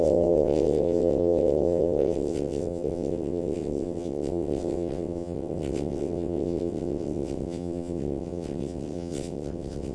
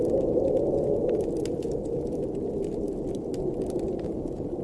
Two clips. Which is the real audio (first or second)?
second